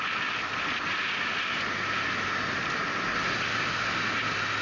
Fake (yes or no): no